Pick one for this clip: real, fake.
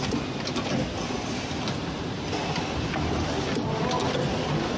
real